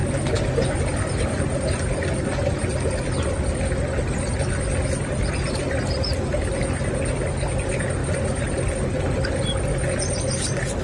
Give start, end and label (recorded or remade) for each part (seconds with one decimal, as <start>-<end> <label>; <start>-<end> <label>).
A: 0.0-10.8 recorded